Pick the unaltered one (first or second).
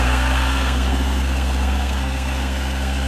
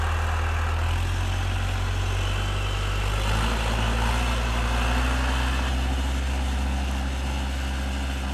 second